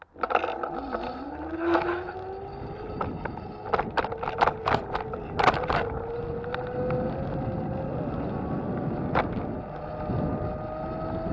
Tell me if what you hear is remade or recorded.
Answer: recorded